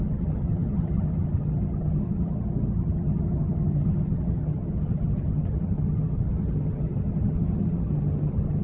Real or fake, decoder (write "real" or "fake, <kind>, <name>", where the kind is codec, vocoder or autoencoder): fake, vocoder, HiFi-GAN